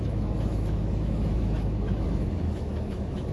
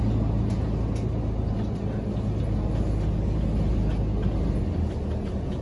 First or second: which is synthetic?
first